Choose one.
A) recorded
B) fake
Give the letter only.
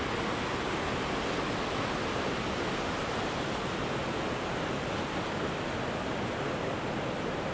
A